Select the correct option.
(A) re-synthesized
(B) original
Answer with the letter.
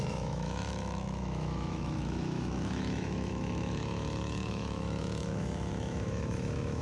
A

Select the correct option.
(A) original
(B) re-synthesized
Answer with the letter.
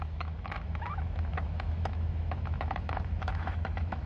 B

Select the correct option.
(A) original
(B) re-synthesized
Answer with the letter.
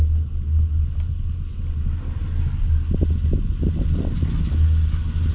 A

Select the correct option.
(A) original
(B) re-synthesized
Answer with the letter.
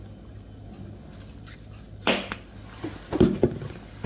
A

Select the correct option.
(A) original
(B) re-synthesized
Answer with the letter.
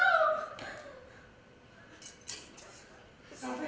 A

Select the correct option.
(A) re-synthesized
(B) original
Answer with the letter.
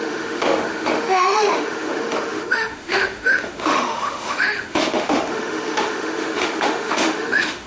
A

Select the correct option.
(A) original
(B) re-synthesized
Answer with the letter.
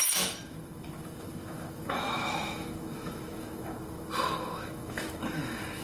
B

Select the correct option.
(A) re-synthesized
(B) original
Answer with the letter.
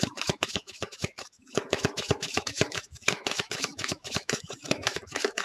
A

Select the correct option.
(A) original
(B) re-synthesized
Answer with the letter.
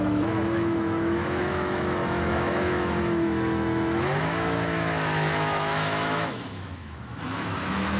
B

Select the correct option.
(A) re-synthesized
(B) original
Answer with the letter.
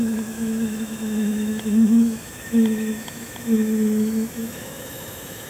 A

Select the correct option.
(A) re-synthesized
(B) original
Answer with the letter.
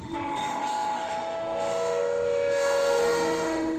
A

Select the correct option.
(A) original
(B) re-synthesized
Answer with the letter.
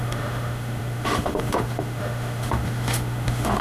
B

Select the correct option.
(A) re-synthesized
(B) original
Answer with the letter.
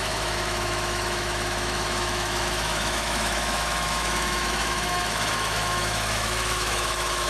A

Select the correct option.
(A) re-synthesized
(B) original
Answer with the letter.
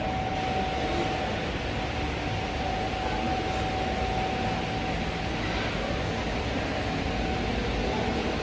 B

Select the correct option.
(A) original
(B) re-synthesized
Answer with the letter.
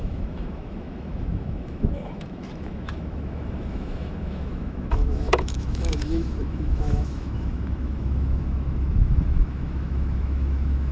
B